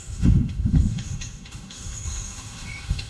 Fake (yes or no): yes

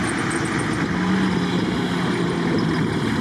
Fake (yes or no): no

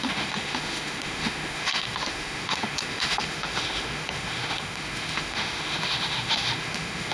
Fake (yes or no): yes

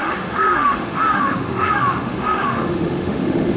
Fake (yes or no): yes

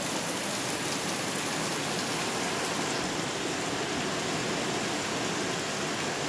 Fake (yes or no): no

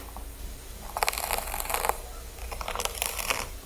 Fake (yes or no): no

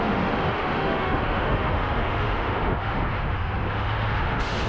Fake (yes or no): yes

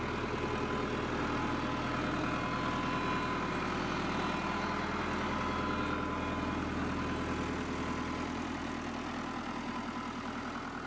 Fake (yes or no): no